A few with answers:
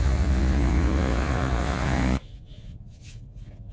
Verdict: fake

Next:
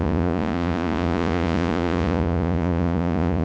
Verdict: fake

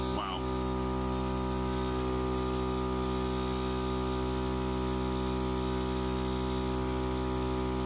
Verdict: real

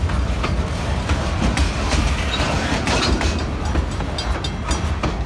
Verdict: real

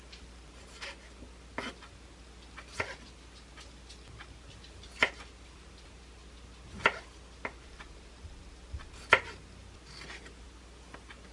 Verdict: real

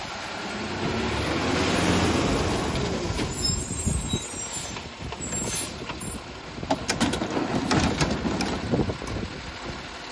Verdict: real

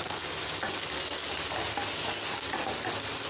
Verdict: real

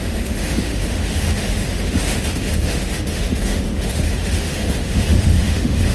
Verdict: fake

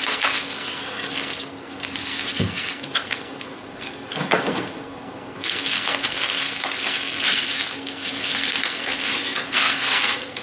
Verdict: fake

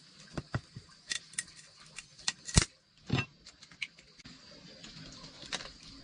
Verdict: real